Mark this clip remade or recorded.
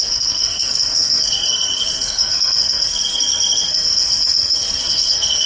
remade